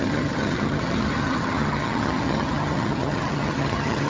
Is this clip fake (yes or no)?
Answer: yes